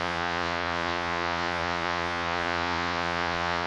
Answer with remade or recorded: remade